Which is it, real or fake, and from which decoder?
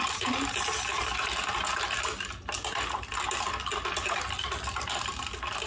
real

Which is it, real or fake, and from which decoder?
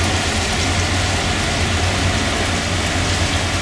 real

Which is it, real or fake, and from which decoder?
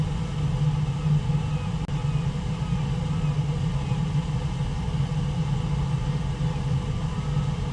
real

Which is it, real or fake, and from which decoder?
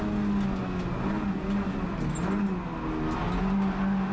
real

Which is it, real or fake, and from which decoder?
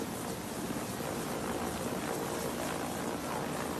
real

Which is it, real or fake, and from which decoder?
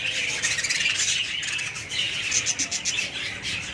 real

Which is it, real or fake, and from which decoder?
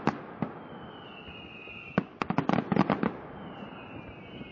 real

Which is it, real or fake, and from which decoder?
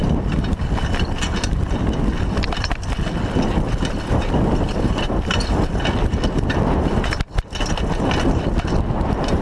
real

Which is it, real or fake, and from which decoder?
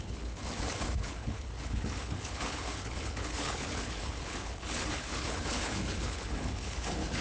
fake, codec, HILCodec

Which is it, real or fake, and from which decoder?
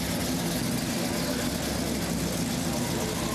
real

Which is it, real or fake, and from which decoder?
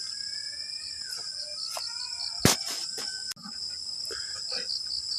real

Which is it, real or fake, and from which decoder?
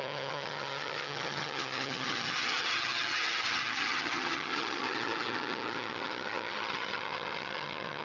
fake, vocoder, HiFi-GAN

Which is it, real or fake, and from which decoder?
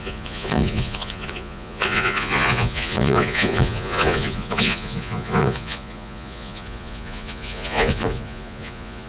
fake, vocoder, Vocos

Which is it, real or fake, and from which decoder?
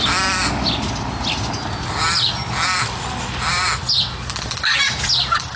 real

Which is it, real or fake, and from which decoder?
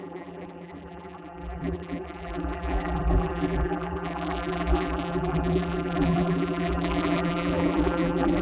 fake, vocoder, BigVGAN v2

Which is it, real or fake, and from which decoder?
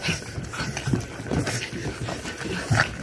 real